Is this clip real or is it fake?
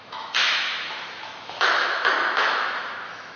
fake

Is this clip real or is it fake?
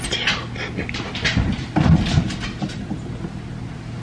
real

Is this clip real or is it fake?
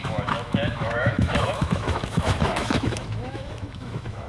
fake